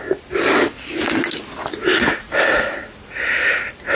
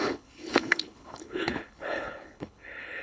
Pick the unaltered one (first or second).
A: first